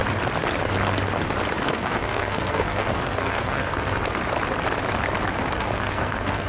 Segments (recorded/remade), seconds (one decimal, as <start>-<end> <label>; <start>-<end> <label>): 0.0-1.7 recorded; 1.7-4.0 remade; 4.0-5.4 recorded; 5.4-6.5 remade

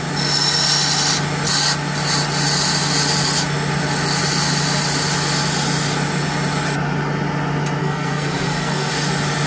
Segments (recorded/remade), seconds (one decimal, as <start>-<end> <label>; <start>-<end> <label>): 0.0-7.8 recorded; 7.8-8.9 remade; 8.9-9.5 recorded

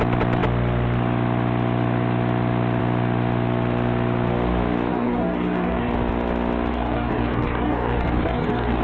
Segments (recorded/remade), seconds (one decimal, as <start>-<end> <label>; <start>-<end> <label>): 0.0-4.9 recorded; 4.9-5.9 remade; 5.9-6.7 recorded; 6.7-8.8 remade